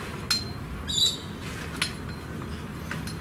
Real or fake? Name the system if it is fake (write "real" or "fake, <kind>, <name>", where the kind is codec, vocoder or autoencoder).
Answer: real